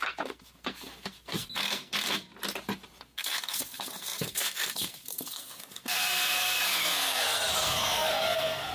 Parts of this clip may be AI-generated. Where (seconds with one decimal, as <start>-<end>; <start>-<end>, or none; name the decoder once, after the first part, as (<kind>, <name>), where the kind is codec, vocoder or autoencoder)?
0.0-2.3 (codec, SNAC); 3.0-8.7